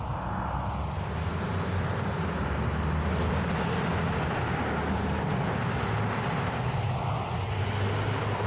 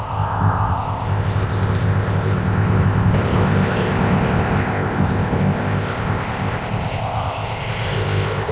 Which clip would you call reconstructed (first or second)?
second